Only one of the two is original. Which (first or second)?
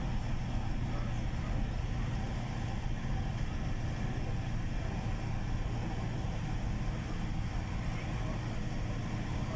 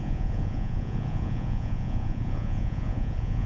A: first